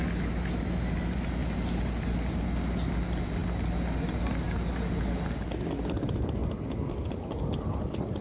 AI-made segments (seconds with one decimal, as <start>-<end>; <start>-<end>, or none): 6.4-8.2